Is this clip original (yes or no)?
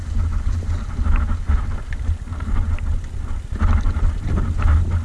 yes